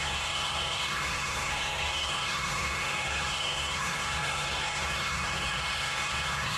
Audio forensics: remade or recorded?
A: remade